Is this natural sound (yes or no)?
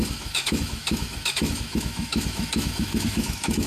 no